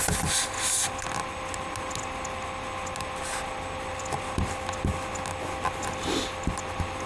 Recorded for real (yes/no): yes